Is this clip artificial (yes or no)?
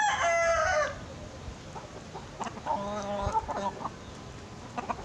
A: no